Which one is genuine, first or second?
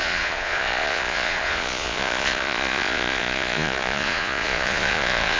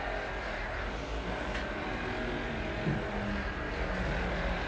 second